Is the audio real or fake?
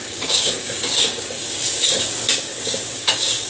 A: fake